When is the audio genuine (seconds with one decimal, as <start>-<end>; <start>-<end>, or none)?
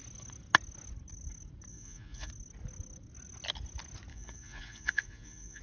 0.0-1.7; 2.3-4.1